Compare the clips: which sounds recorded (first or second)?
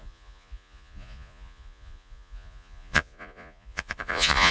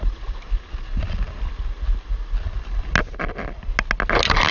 second